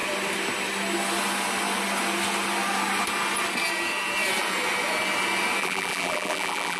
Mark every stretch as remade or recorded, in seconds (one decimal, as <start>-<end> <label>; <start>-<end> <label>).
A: 0.0-5.6 recorded; 5.6-6.8 remade